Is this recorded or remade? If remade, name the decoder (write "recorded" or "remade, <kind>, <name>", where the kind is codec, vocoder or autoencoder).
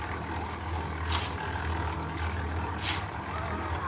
recorded